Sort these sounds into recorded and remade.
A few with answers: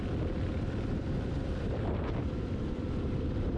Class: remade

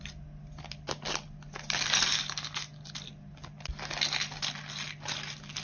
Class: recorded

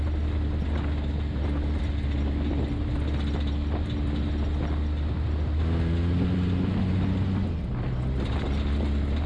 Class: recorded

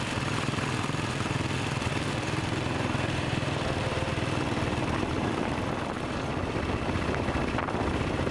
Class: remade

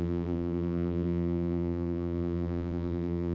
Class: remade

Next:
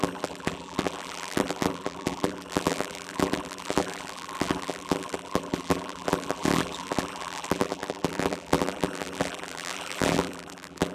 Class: remade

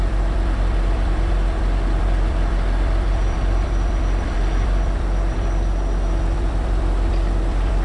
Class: remade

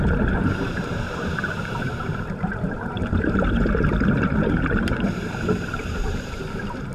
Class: remade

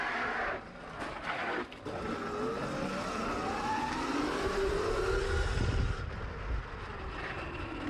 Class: recorded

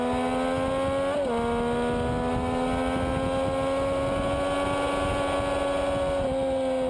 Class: recorded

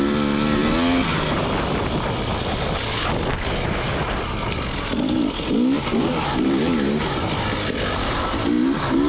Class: recorded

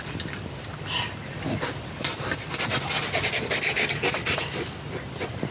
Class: remade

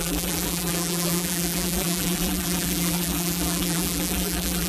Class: remade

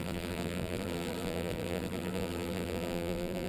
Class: remade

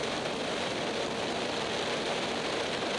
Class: remade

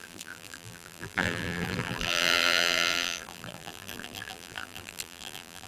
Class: remade